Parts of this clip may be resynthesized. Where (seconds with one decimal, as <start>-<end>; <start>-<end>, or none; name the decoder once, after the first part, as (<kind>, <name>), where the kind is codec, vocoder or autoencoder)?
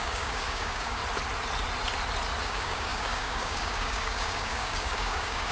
0.0-1.0 (codec, DAC); 2.4-5.5